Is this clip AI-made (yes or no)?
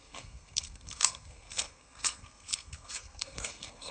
yes